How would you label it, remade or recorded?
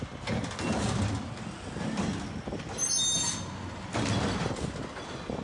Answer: recorded